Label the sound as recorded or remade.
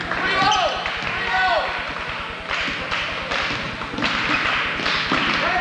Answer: recorded